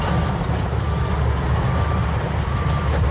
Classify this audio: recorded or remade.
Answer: recorded